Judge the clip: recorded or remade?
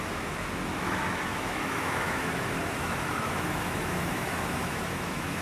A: remade